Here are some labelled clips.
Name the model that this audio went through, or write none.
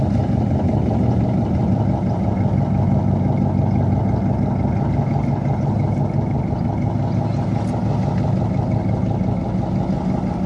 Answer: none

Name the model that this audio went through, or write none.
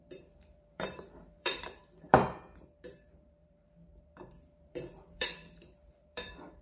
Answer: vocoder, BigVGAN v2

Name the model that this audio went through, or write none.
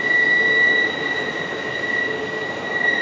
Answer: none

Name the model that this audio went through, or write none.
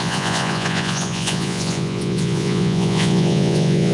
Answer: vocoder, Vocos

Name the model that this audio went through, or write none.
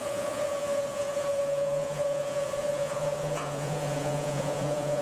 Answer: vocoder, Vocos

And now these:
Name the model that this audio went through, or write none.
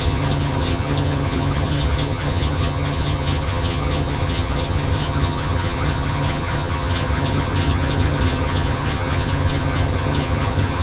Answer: vocoder, HiFi-GAN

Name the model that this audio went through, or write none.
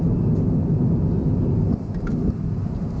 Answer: none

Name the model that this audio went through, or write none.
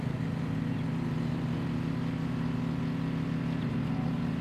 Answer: none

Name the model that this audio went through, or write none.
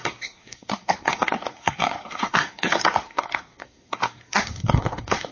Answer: codec, SNAC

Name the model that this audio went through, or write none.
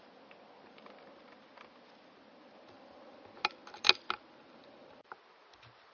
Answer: none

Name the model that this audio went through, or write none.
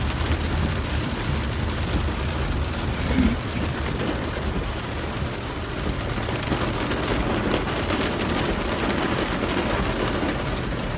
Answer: none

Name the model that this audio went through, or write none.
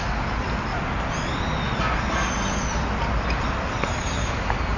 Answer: none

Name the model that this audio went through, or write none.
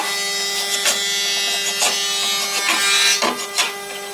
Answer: none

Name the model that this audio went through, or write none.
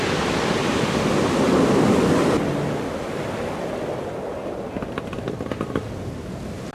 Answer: none